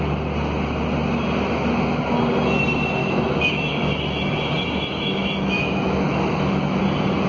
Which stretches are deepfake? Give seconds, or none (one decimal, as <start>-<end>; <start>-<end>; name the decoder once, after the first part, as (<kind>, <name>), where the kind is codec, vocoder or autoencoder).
3.0-6.8 (autoencoder, DAC-VAE)